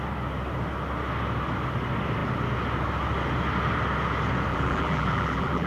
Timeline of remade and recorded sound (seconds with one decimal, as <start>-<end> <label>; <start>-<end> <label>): 0.0-4.5 recorded; 4.5-5.7 remade